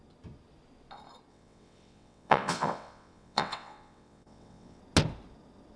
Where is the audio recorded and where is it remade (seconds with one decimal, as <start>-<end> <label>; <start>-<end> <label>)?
0.0-1.3 recorded; 1.3-4.8 remade; 4.8-5.8 recorded